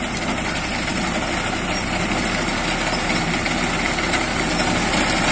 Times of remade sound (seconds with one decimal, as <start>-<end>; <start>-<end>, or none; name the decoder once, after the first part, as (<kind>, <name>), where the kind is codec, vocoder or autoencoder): none